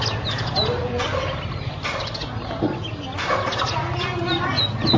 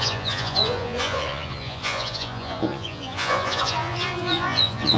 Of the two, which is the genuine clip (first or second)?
first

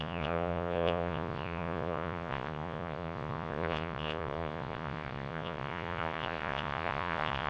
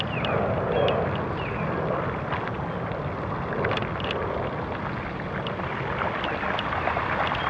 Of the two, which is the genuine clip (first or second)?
second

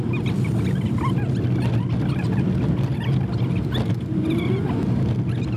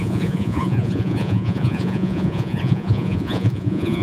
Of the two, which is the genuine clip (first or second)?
first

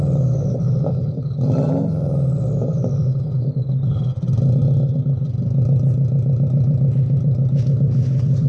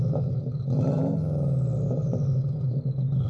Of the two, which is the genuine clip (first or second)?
second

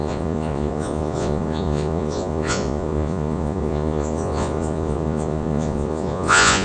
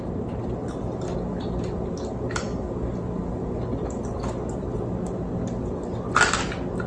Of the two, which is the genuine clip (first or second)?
second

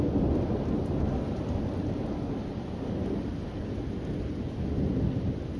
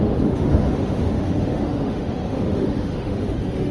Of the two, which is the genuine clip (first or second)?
first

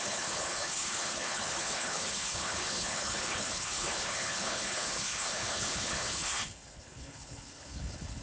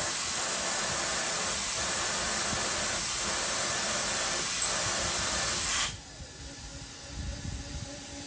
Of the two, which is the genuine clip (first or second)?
second